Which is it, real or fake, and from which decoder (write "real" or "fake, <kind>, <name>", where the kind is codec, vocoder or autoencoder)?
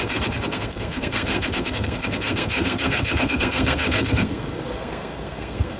fake, codec, SNAC